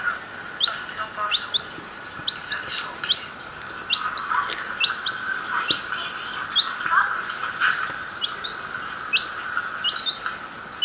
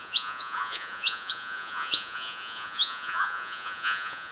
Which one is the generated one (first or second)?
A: second